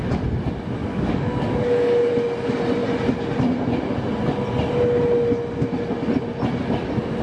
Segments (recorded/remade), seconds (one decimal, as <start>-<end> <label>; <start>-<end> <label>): 0.0-0.8 recorded; 0.8-2.1 remade; 2.1-7.2 recorded